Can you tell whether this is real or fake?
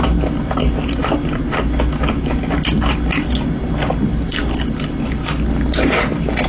real